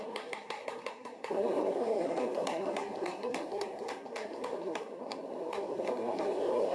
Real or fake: fake